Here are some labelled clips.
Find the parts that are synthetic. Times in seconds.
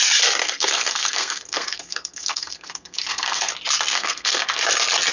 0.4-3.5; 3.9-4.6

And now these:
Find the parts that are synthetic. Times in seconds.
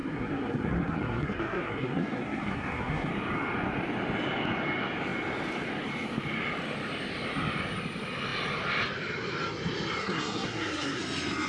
0.0-3.1; 10.0-11.0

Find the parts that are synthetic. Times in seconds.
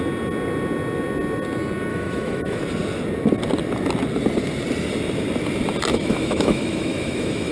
1.9-2.6; 5.9-7.5